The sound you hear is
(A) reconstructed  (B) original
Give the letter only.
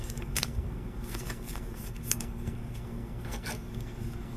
A